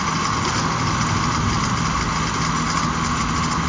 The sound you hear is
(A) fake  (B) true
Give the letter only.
B